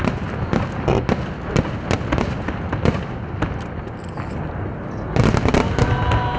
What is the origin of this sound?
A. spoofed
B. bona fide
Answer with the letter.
B